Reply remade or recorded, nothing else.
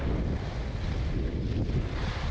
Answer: recorded